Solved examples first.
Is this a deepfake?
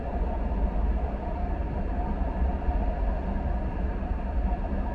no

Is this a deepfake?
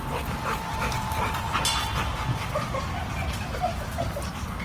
no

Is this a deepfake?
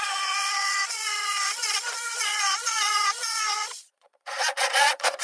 yes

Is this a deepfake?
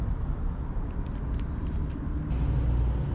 no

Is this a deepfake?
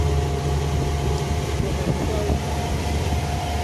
no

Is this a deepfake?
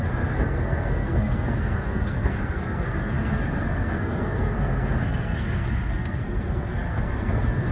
yes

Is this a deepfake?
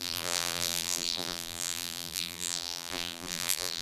yes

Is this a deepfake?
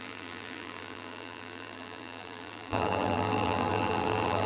yes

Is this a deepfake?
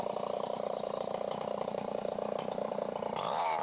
yes